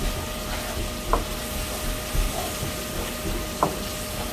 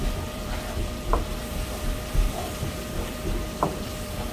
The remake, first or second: second